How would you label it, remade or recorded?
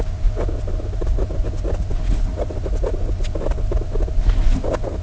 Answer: recorded